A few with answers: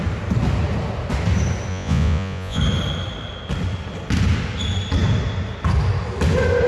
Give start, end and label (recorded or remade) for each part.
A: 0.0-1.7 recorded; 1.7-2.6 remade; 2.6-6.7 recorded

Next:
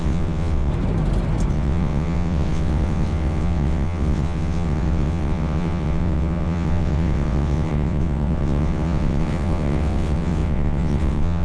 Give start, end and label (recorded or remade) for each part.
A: 0.0-0.7 remade; 0.7-1.5 recorded; 1.5-11.4 remade

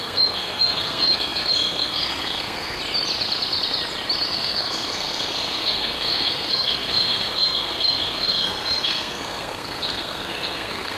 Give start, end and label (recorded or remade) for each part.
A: 0.0-2.8 remade; 2.8-4.3 recorded; 4.3-11.0 remade